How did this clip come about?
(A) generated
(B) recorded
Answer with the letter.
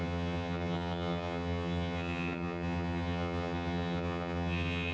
A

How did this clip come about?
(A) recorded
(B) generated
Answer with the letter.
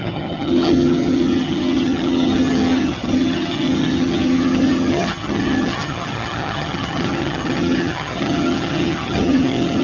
B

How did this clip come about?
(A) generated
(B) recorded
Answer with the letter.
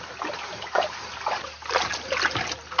B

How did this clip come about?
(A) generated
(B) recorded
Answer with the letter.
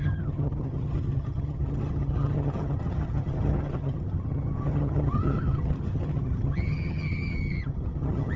A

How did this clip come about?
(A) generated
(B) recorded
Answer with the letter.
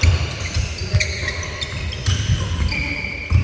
B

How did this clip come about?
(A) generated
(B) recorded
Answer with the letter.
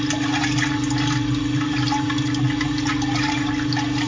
B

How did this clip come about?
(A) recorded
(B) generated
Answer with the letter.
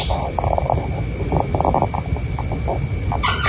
A